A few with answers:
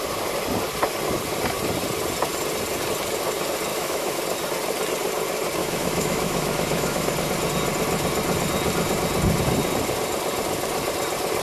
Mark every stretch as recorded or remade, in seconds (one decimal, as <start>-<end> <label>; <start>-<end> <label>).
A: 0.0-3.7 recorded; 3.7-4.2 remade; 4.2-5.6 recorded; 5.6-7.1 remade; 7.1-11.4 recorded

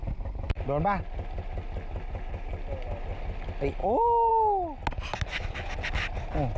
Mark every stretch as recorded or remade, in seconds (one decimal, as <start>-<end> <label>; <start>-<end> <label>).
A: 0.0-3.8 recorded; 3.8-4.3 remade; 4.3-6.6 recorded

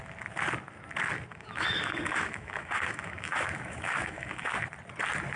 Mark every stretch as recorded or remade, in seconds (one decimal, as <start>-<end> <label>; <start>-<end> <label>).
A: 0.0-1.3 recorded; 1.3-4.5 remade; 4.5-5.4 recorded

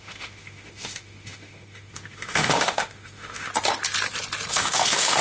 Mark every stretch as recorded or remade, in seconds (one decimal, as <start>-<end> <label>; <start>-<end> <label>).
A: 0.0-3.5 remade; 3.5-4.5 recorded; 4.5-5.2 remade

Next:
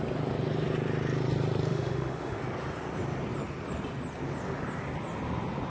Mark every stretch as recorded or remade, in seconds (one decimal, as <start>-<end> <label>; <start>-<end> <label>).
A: 0.0-1.7 recorded; 1.7-2.4 remade; 2.4-5.7 recorded

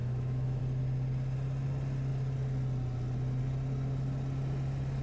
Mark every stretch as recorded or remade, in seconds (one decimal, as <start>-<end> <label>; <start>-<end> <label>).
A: 0.0-0.6 remade; 0.6-5.0 recorded

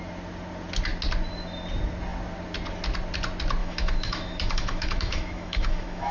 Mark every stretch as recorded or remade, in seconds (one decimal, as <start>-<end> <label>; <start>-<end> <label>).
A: 0.0-3.6 recorded; 3.6-6.1 remade

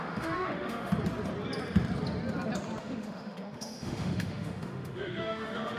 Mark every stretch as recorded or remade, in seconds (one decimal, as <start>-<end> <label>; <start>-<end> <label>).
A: 0.0-0.9 remade; 0.9-2.8 recorded; 2.8-5.8 remade